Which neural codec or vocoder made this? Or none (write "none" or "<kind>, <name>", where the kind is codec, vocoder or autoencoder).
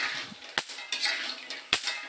none